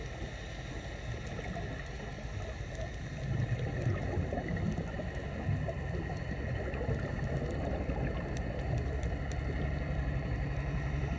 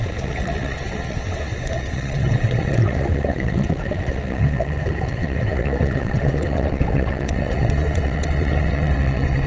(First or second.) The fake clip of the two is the second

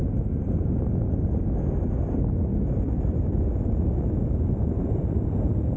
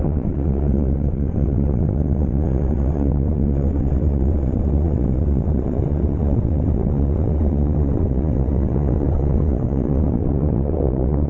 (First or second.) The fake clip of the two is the second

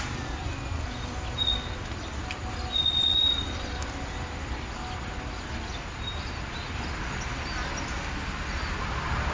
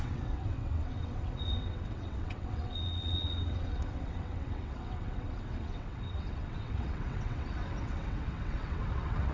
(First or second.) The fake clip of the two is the second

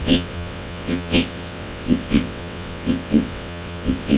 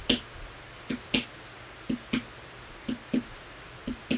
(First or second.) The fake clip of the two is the first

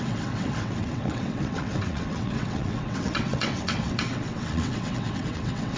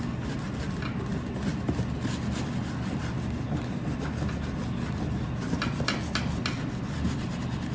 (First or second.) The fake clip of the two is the first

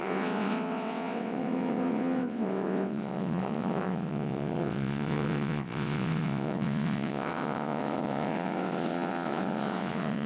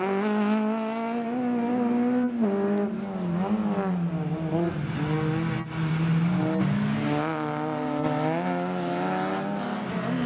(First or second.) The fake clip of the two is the first